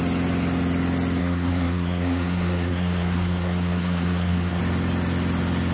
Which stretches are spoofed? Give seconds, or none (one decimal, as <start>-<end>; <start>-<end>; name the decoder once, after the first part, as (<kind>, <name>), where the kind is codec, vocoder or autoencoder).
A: 1.2-4.6 (codec, SNAC)